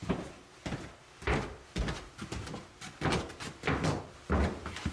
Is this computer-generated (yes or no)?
no